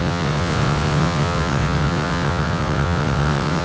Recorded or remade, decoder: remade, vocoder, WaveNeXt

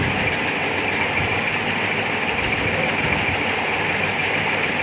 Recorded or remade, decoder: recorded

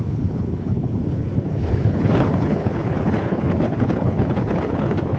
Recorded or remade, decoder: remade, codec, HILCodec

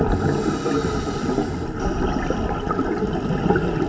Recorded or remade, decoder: recorded